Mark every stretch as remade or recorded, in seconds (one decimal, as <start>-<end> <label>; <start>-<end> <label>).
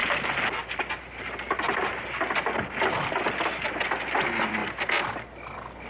0.0-5.9 recorded